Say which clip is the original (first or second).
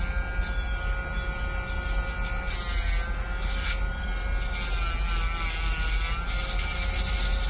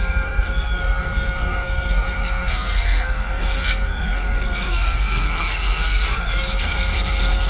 first